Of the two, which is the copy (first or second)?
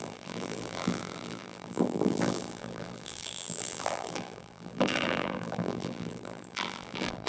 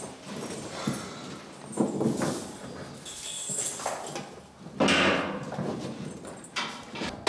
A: first